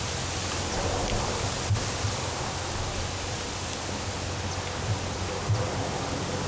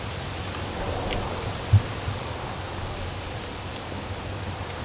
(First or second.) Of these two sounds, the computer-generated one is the second